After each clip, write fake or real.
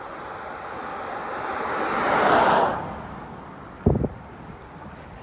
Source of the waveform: real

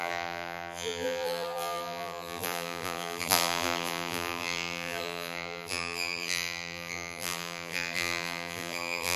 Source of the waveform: fake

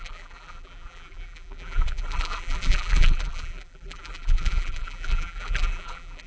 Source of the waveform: fake